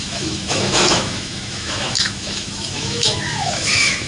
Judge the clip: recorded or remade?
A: remade